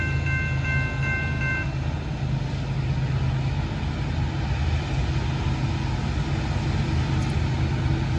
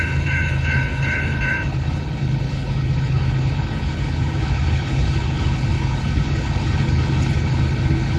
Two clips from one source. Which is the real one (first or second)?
first